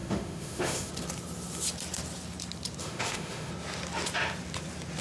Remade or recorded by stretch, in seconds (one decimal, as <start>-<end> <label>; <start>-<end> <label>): 0.0-0.9 remade; 0.9-2.8 recorded; 2.8-3.5 remade; 3.5-5.0 recorded

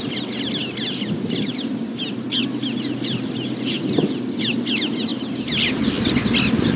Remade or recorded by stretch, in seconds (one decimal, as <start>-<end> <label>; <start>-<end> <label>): 0.0-6.8 recorded